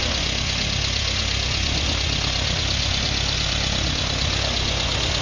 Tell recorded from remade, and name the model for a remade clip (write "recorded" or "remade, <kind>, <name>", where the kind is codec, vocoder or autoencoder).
remade, vocoder, Vocos